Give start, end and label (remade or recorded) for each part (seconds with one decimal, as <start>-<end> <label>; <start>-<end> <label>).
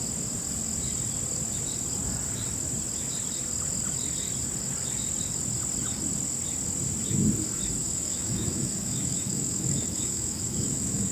0.0-7.8 recorded; 7.8-11.1 remade